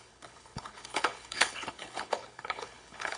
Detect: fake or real fake